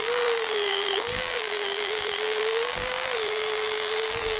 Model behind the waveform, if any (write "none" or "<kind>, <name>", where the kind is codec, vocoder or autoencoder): vocoder, BigVGAN v2